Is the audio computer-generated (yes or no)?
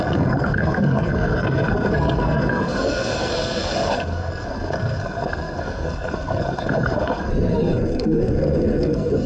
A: yes